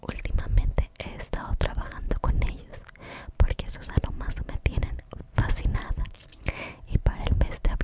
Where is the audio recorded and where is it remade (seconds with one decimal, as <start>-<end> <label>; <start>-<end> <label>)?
0.0-0.7 remade; 0.7-2.7 recorded; 2.7-7.8 remade